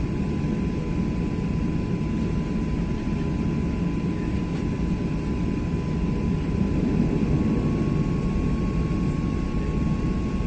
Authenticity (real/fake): real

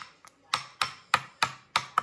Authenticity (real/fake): real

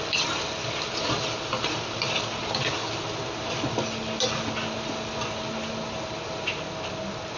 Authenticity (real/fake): real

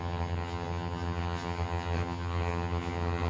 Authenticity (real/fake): fake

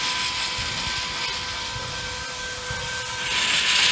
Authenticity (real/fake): real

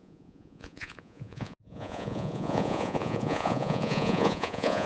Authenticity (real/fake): fake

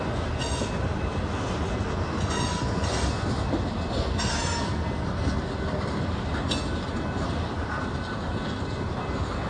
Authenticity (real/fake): real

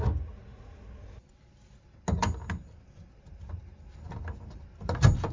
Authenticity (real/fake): real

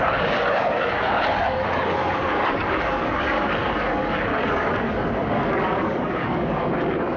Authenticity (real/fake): fake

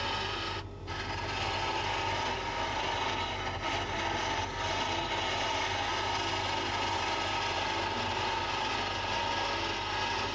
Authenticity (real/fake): real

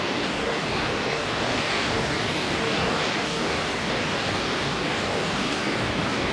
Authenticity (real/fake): fake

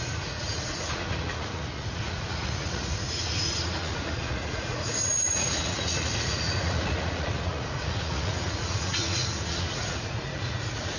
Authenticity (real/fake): fake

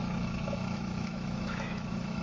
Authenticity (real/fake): fake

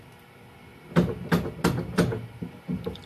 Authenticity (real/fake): real